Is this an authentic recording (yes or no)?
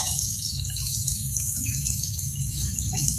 no